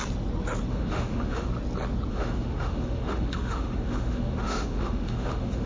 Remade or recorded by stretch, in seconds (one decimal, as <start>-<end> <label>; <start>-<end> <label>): 0.0-0.7 recorded; 0.7-1.5 remade; 1.5-2.1 recorded; 2.1-5.7 remade